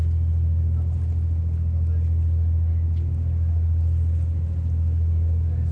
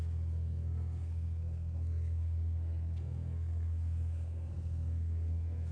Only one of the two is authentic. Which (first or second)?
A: first